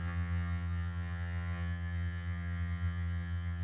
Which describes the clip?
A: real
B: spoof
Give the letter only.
B